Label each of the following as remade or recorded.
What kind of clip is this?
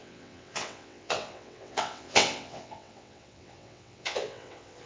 remade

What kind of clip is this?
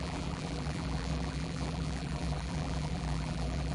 remade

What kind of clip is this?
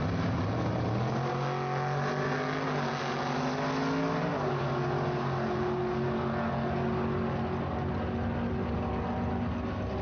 recorded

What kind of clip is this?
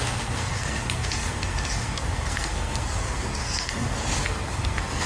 remade